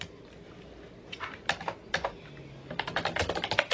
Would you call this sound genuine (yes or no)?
yes